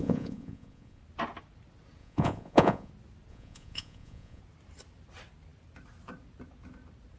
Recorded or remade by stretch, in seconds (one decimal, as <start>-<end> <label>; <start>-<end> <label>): 0.0-1.0 remade; 1.0-2.0 recorded; 2.0-2.9 remade; 2.9-3.3 recorded; 3.3-4.4 remade; 4.4-7.2 recorded